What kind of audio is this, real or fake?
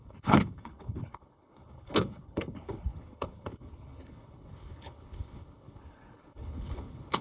fake